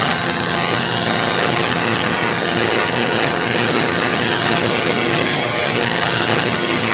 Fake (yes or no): yes